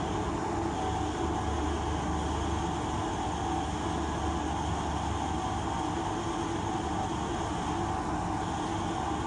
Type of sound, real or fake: real